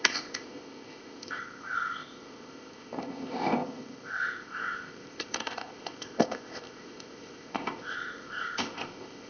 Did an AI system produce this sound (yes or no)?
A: yes